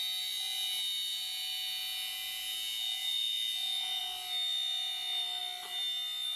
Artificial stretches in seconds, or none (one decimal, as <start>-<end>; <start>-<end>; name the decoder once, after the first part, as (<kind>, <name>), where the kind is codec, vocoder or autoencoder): 1.1-4.0 (vocoder, Vocos)